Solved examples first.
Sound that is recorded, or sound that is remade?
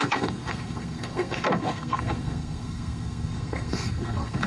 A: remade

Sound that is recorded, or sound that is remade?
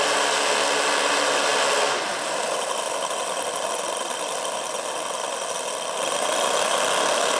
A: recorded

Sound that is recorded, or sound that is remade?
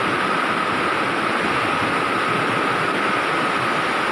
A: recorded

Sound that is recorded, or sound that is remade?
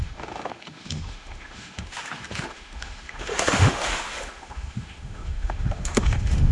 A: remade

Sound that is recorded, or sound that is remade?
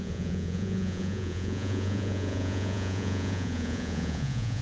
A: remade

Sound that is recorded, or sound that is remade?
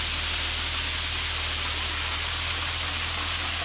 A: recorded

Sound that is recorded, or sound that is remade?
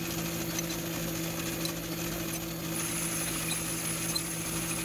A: recorded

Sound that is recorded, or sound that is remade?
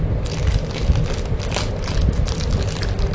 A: recorded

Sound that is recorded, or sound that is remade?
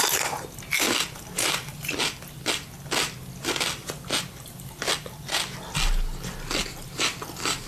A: recorded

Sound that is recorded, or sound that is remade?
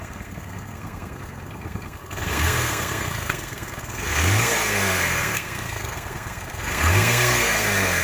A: remade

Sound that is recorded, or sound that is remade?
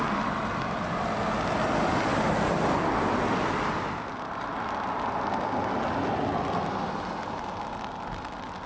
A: recorded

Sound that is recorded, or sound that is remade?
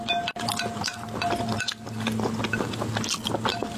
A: recorded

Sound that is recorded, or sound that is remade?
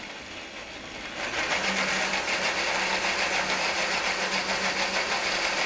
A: recorded